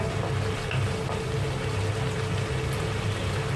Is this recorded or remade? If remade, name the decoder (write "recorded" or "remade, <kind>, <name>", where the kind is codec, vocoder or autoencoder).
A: recorded